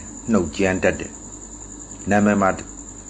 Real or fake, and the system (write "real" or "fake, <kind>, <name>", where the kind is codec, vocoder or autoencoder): real